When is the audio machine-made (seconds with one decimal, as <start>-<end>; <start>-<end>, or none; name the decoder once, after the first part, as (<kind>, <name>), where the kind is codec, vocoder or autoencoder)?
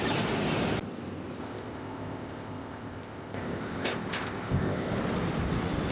1.4-4.9 (codec, ZipCodec)